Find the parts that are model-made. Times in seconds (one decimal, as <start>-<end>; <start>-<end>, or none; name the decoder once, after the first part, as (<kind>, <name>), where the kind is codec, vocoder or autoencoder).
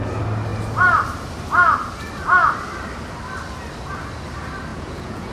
4.7-5.3 (vocoder, Vocos)